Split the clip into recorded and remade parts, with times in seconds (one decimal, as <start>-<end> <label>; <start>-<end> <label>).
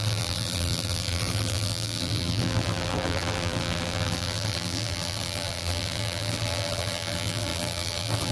0.0-8.3 remade